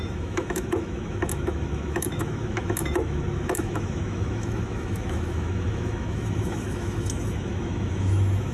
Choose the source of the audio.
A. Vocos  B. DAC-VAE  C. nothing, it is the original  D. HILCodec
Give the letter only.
B